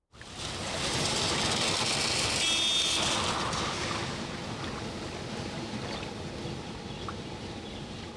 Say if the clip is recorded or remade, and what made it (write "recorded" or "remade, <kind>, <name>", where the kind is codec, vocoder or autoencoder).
recorded